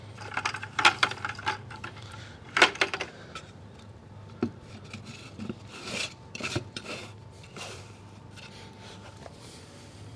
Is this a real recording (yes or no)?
no